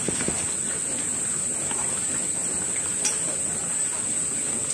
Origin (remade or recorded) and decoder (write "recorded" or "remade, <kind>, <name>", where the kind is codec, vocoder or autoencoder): recorded